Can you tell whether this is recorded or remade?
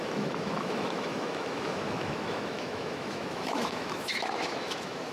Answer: remade